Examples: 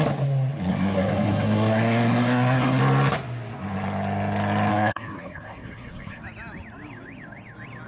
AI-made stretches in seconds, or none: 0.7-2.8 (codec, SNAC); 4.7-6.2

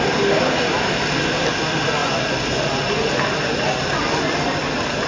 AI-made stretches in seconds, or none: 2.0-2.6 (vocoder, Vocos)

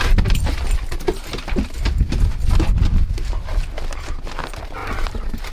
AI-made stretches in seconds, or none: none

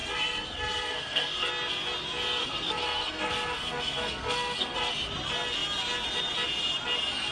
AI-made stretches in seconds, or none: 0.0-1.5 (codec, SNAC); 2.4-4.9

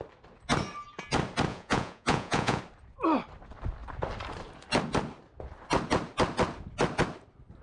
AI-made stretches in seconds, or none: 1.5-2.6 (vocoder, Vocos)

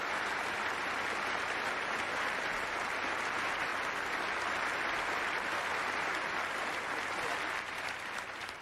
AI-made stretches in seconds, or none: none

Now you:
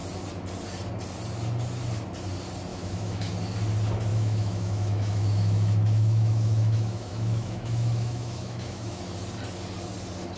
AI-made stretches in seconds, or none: 2.7-3.3 (autoencoder, DAC-VAE); 4.1-9.0